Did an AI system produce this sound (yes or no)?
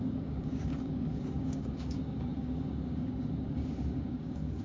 yes